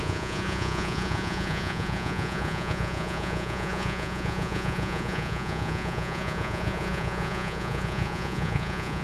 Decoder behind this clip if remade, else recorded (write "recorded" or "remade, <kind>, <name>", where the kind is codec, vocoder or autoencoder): remade, vocoder, Vocos